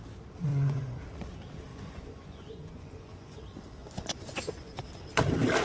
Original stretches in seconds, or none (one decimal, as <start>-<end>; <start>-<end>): 0.0-0.5; 1.0-1.7; 3.4-3.8; 4.8-5.6